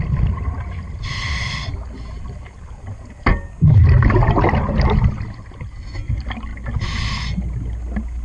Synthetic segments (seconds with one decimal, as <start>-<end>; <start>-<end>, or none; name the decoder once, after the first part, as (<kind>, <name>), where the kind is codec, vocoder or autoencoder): none